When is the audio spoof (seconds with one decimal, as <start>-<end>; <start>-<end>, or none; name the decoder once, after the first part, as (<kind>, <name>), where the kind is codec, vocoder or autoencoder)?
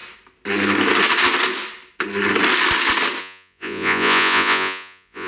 3.2-5.3 (vocoder, Vocos)